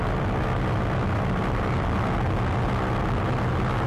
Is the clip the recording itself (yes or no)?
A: yes